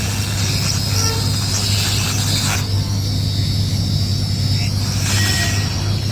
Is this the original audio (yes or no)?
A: yes